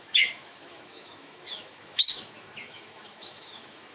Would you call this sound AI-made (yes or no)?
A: yes